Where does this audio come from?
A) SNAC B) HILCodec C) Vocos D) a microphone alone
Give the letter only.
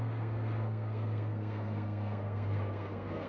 A